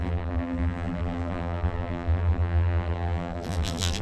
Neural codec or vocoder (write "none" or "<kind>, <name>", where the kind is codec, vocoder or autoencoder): vocoder, BigVGAN v2